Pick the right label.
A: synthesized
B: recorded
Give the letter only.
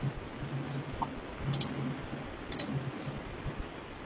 B